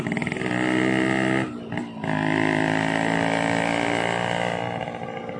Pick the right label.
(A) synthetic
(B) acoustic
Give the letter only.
B